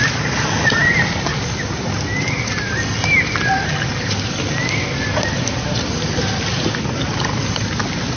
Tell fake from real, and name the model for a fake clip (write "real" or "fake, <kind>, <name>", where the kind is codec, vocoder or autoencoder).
real